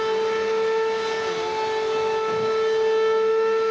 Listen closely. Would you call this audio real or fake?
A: real